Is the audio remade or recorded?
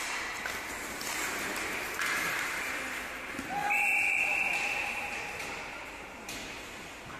recorded